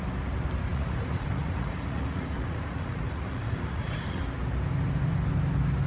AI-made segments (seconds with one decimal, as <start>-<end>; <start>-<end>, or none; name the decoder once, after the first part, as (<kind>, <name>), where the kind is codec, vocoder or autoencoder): 0.7-4.2 (vocoder, Vocos)